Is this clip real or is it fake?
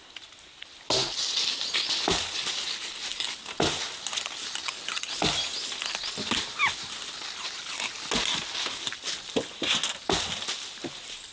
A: real